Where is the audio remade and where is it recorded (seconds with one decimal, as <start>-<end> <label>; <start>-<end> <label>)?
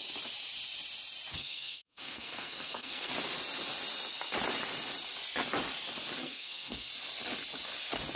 0.0-1.3 recorded; 1.3-3.1 remade; 3.1-6.2 recorded; 6.2-6.9 remade; 6.9-8.2 recorded